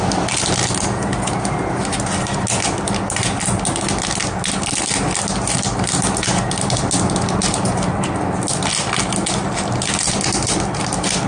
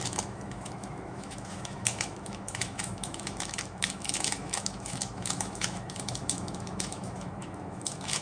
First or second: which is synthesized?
second